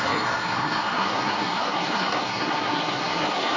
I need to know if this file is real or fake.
fake